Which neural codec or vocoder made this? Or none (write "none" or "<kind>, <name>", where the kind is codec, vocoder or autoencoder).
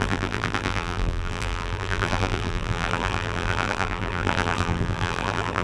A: vocoder, BigVGAN v2